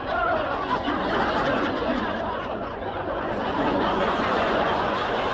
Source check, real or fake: fake